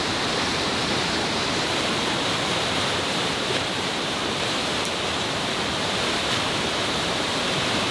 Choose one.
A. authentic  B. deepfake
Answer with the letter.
B